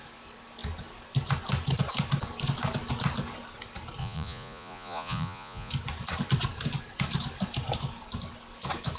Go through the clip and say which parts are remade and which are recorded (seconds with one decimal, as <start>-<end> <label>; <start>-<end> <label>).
0.0-4.0 recorded; 4.0-5.7 remade; 5.7-9.0 recorded